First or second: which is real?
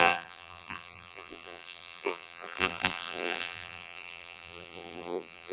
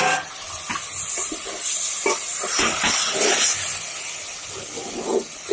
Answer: second